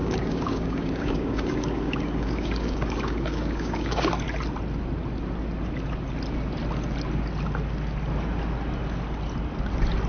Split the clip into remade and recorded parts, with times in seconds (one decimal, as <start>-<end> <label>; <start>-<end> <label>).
0.0-4.1 remade; 4.1-10.1 recorded